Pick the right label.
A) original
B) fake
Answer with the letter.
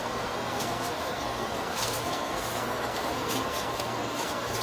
B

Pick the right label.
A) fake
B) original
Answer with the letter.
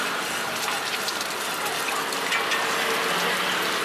B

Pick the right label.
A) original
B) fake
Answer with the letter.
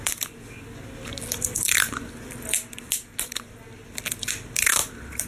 A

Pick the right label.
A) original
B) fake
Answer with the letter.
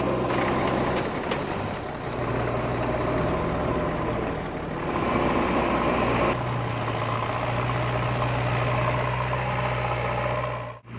A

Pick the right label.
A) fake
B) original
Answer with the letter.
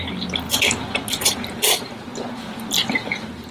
B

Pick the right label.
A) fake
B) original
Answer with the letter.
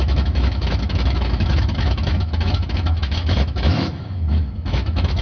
A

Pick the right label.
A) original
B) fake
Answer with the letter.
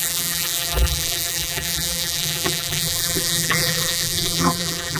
B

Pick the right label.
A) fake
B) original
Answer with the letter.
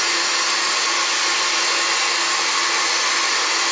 B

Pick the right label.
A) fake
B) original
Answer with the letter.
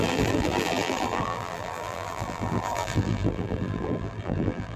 A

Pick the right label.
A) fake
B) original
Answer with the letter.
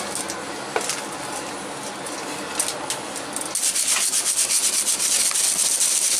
B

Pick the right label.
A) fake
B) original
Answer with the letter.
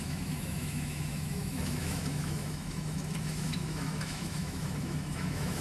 A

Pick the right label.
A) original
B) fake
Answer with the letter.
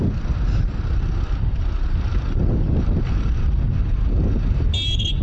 A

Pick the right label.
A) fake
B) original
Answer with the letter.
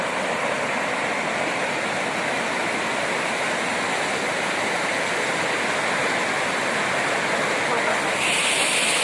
B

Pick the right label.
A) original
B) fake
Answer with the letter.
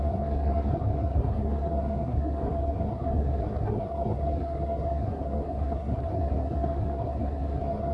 B